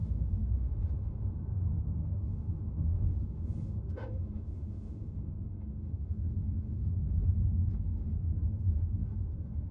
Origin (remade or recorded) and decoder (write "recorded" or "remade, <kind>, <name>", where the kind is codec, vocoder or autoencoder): remade, autoencoder, DAC-VAE